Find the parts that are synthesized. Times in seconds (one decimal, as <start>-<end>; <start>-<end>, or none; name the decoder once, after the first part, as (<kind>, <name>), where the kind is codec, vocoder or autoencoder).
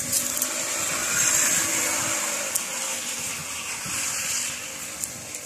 none